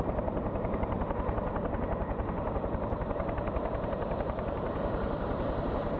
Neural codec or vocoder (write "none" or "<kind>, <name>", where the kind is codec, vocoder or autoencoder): vocoder, BigVGAN v2